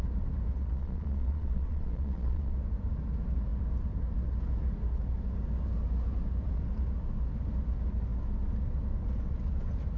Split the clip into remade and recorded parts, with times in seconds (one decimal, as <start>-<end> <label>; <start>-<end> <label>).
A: 0.0-0.6 recorded; 0.6-2.5 remade; 2.5-10.0 recorded